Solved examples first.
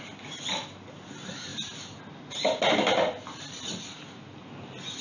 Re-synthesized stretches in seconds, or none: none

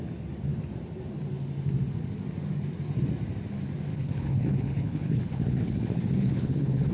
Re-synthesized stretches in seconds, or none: 3.9-6.9 (codec, HILCodec)

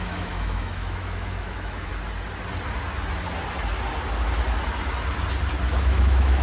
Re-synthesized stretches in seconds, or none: 0.0-1.9 (autoencoder, DAC-VAE); 5.7-6.4